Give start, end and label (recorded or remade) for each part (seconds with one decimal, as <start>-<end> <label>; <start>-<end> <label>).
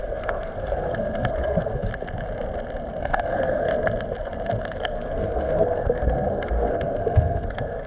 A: 0.0-1.9 remade; 1.9-3.0 recorded; 3.0-3.7 remade; 3.7-4.6 recorded; 4.6-7.9 remade